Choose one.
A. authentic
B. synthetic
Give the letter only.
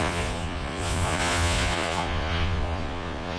B